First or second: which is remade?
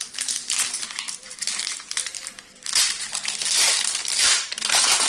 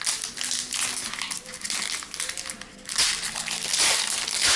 first